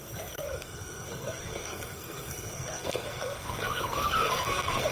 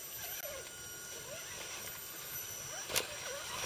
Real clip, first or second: second